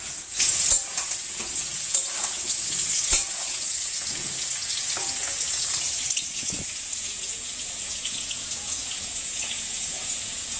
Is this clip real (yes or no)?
no